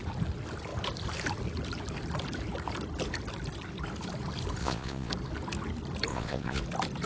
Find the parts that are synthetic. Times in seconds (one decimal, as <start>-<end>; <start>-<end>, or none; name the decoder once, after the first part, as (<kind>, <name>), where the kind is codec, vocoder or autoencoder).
4.6-5.1 (vocoder, Vocos); 6.1-6.6

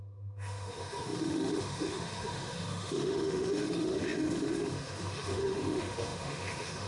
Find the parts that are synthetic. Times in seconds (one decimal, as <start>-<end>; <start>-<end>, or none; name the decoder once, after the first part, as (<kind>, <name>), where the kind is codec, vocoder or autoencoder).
0.0-6.9 (autoencoder, DAC-VAE)

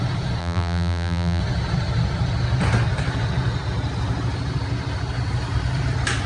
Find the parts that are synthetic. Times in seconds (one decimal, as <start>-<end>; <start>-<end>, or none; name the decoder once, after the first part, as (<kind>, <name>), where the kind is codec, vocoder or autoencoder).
0.4-1.4 (vocoder, BigVGAN v2)

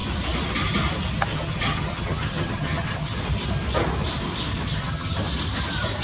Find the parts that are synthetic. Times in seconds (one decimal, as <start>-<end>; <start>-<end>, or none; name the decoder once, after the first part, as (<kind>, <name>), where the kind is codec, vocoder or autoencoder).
1.3-3.2 (vocoder, HiFi-GAN); 4.7-5.2

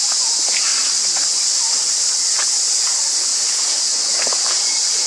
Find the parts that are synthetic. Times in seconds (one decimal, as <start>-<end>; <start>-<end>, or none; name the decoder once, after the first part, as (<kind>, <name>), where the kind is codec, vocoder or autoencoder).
0.0-0.7 (vocoder, Vocos); 2.3-5.1

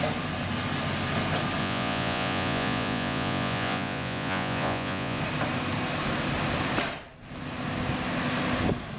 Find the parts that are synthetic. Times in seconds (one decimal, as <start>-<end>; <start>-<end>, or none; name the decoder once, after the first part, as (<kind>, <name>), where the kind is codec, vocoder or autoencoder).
1.6-5.2 (vocoder, Vocos)

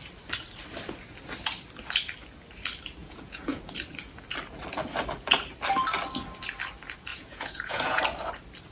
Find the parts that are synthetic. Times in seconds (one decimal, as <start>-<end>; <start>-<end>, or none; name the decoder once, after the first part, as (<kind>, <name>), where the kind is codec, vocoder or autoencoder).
3.0-3.6 (vocoder, Vocos); 7.1-8.0

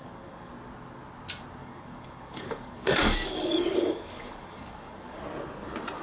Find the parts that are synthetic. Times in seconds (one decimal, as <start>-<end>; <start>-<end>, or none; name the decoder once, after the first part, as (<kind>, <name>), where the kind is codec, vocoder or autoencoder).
0.0-0.5 (codec, DAC); 1.6-5.2